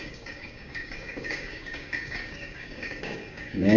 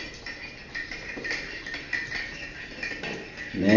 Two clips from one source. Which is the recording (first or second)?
second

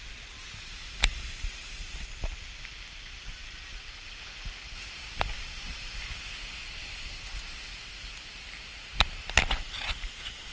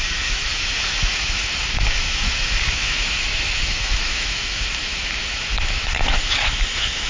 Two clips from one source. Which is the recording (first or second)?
first